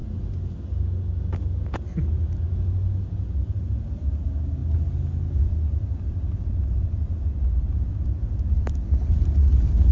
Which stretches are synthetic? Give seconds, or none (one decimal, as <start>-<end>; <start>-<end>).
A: none